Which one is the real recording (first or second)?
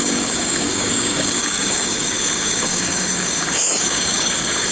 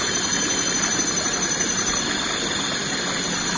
second